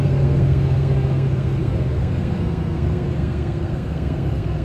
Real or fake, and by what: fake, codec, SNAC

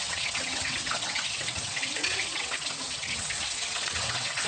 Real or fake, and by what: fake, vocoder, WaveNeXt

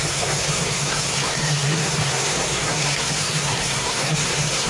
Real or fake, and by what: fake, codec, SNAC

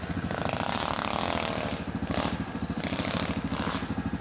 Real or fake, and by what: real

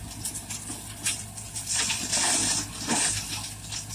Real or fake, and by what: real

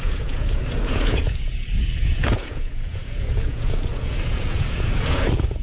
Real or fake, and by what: fake, vocoder, Vocos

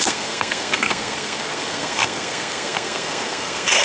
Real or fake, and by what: fake, codec, SNAC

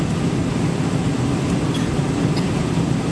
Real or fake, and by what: real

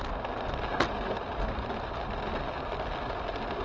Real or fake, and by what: real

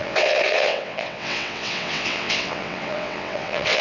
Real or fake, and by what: fake, vocoder, WaveNeXt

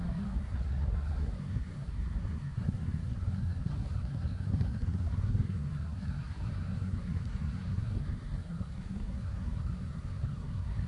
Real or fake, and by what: fake, codec, SNAC